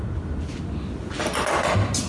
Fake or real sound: real